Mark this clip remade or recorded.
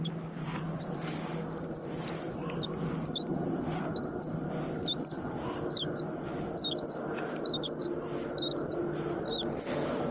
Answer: recorded